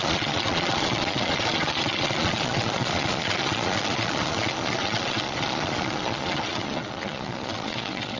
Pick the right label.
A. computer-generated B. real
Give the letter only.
A